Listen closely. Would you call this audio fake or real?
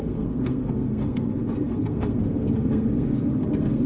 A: fake